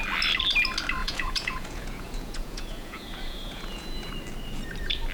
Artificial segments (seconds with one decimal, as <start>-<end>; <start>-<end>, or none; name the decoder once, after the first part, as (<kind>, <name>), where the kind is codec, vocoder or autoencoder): 1.0-4.1 (vocoder, Vocos)